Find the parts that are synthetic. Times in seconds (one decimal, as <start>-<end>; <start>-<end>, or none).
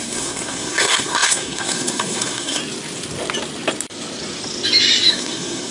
0.0-2.6; 5.1-5.7